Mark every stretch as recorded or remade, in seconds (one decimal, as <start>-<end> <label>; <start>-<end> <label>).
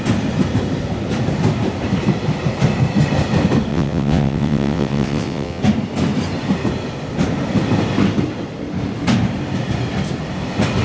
0.0-3.7 recorded; 3.7-5.6 remade; 5.6-10.8 recorded